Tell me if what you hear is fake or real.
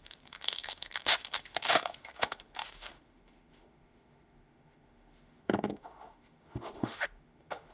fake